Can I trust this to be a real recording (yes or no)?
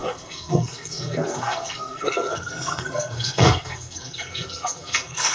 no